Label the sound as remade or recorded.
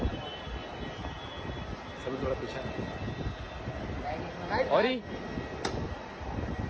recorded